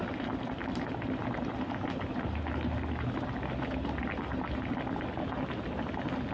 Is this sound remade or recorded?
recorded